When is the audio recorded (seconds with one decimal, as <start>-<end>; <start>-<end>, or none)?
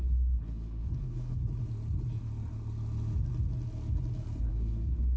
1.4-4.5